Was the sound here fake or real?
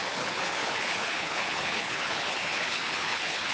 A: fake